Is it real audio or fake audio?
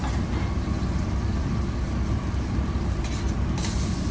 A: real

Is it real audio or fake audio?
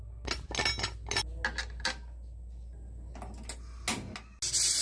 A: real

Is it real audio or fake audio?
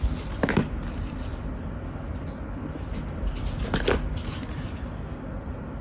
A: real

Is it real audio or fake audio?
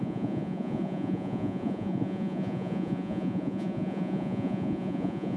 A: fake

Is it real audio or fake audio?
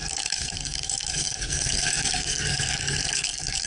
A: fake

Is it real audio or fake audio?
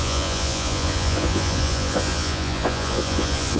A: fake